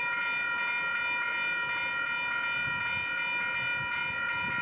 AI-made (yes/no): no